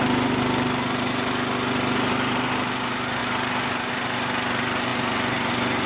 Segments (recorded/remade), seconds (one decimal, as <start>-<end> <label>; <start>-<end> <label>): 0.0-5.9 recorded